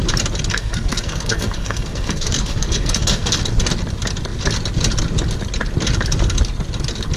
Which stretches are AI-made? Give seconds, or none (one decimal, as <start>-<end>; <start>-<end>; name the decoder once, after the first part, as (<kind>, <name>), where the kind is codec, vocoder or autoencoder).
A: 0.5-3.4 (codec, SNAC)